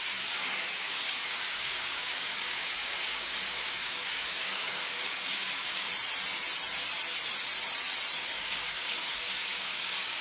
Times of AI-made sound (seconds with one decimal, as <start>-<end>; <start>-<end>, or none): 0.0-5.9; 8.2-10.2